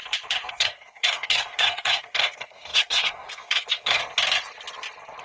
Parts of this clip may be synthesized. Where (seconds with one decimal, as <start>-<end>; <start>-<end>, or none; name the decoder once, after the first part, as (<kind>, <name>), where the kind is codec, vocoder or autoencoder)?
0.5-4.0 (codec, SNAC)